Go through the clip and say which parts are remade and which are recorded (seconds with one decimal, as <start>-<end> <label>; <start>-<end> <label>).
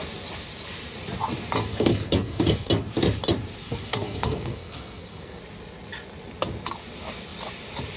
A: 0.0-1.7 recorded; 1.7-2.7 remade; 2.7-3.6 recorded; 3.6-5.4 remade; 5.4-8.0 recorded